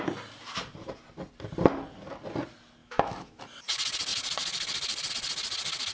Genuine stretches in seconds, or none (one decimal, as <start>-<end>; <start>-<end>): 0.0-2.8; 3.4-5.9